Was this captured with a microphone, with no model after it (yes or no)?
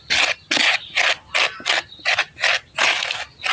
yes